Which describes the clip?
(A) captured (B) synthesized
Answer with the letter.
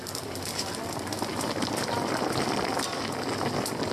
A